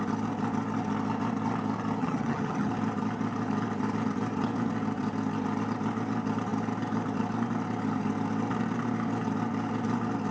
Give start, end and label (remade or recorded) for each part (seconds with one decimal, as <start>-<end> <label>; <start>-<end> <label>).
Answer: 0.0-2.0 recorded; 2.0-2.7 remade; 2.7-10.3 recorded